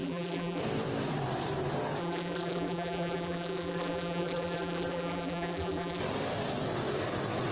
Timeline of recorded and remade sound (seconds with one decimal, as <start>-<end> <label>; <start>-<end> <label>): 0.0-0.6 remade; 0.6-2.0 recorded; 2.0-6.0 remade; 6.0-7.5 recorded